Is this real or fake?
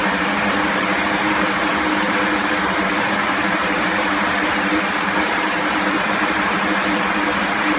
fake